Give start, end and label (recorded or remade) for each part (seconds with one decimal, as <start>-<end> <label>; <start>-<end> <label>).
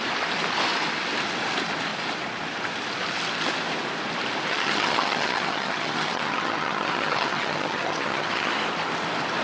0.0-4.5 recorded; 4.5-8.5 remade; 8.5-9.4 recorded